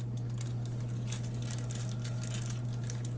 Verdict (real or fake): real